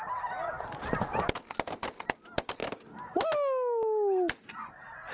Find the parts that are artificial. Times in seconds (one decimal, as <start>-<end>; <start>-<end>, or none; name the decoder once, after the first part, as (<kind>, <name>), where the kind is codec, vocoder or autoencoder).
none

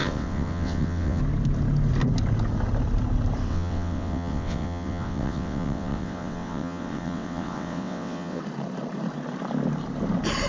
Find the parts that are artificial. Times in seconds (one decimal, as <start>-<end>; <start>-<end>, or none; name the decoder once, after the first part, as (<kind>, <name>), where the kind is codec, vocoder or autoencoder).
0.0-1.2 (vocoder, WaveNeXt); 3.5-8.4

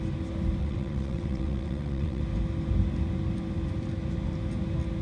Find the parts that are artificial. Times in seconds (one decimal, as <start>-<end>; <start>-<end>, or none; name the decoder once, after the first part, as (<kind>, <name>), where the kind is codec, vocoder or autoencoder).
0.6-2.2 (vocoder, WaveNeXt)

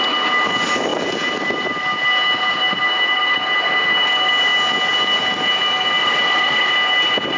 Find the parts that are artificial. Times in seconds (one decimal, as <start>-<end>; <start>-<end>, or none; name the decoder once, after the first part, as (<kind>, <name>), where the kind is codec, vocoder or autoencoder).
6.0-6.7 (vocoder, WaveNeXt)

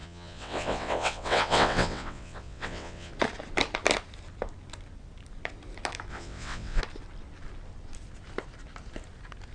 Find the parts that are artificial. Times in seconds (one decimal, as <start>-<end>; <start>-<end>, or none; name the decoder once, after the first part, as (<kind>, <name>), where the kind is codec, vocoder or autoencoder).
0.0-3.1 (vocoder, WaveNeXt); 6.1-6.8

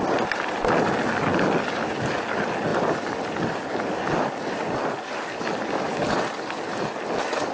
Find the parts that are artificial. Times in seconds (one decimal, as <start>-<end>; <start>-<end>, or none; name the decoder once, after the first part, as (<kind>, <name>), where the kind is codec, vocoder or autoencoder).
none

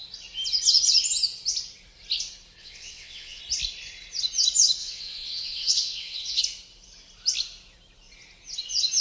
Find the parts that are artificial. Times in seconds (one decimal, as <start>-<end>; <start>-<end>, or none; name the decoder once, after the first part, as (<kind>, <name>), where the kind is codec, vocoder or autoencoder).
2.6-3.4 (vocoder, WaveNeXt); 4.8-6.4

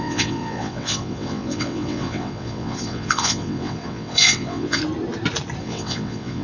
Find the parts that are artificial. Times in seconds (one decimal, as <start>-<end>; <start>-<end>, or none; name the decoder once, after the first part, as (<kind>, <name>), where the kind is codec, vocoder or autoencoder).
0.0-4.8 (vocoder, WaveNeXt); 5.6-6.4